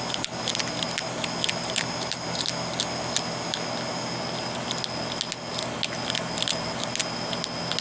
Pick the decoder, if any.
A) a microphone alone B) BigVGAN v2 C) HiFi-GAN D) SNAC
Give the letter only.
A